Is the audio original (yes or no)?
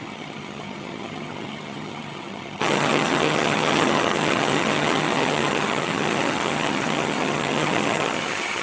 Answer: no